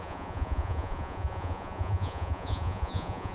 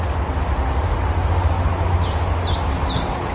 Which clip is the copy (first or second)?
first